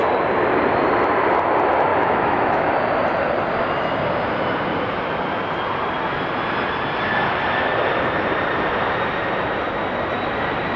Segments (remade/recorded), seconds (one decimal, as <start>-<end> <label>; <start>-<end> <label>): 0.0-1.9 recorded; 1.9-2.7 remade; 2.7-10.8 recorded